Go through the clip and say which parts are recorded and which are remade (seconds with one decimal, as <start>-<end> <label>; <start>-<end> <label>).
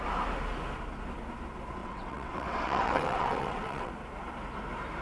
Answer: 0.0-1.8 recorded; 1.8-3.9 remade; 3.9-5.0 recorded